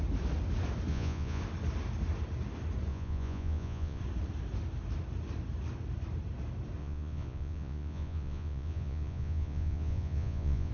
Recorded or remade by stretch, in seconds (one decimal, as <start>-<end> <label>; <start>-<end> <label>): 0.0-0.9 recorded; 0.9-1.4 remade; 1.4-2.9 recorded; 2.9-4.0 remade; 4.0-6.8 recorded; 6.8-10.7 remade